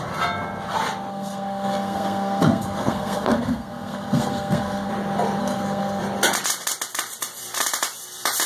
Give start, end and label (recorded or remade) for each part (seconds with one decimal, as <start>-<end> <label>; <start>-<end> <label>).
0.0-1.1 recorded; 1.1-4.9 remade; 4.9-5.4 recorded; 5.4-6.0 remade; 6.0-8.5 recorded